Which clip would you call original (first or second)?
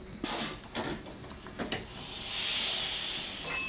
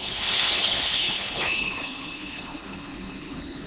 first